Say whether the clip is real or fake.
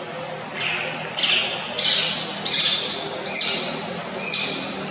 real